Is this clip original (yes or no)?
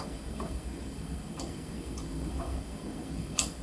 no